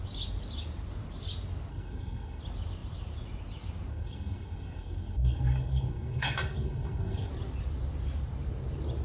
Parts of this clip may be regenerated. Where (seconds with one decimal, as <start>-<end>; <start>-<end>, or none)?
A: 1.7-2.4; 3.9-7.3